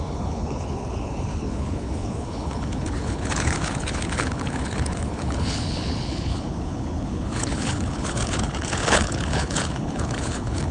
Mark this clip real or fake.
fake